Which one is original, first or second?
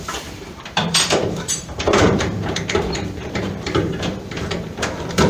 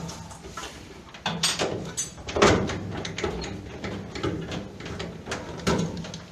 second